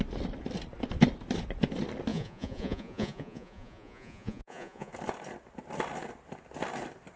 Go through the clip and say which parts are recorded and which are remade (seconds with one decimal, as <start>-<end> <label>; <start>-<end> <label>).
0.0-2.1 recorded; 2.1-4.9 remade; 4.9-7.2 recorded